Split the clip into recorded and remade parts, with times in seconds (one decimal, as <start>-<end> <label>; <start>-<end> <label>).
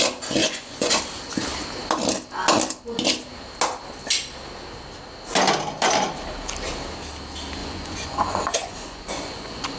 0.0-0.4 recorded; 0.4-1.0 remade; 1.0-7.6 recorded; 7.6-9.8 remade